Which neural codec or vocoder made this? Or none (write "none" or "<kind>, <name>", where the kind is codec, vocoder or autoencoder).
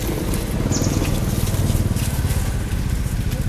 none